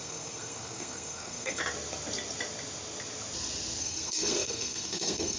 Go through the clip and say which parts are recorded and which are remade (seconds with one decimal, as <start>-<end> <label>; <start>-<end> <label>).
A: 0.0-1.6 remade; 1.6-3.8 recorded; 3.8-5.4 remade